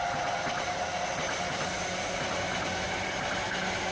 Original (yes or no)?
yes